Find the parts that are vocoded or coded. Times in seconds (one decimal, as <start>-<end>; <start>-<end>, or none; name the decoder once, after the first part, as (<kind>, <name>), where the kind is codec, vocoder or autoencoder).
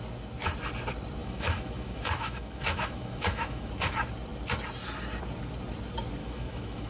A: 1.2-3.7 (autoencoder, DAC-VAE); 6.2-6.9